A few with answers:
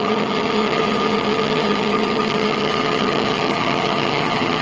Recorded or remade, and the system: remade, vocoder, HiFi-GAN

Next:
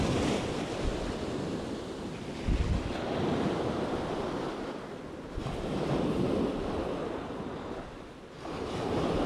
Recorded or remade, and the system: recorded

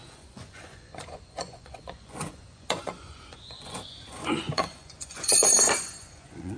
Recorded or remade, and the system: remade, vocoder, Vocos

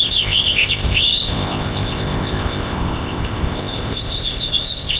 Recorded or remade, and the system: remade, codec, ZipCodec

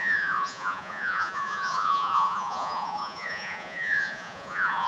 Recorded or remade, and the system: remade, vocoder, Vocos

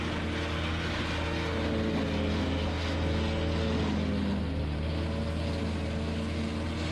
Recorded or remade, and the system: recorded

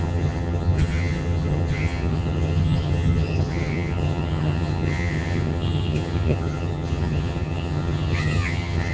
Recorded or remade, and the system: remade, vocoder, HiFi-GAN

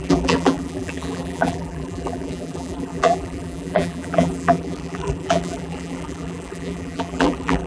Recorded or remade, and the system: remade, vocoder, BigVGAN v2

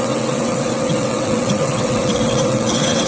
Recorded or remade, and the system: remade, vocoder, WaveNeXt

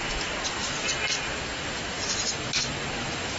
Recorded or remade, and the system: recorded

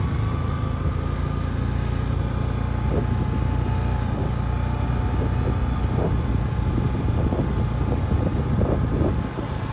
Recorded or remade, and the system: recorded